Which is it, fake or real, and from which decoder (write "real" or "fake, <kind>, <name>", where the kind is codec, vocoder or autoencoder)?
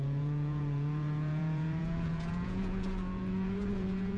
fake, vocoder, Vocos